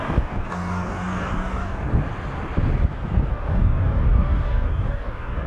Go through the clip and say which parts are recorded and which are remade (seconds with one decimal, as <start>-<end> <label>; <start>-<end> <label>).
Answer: 0.0-1.9 remade; 1.9-3.3 recorded; 3.3-5.5 remade